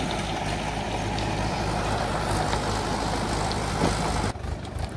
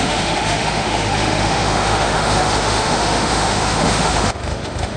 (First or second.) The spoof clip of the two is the second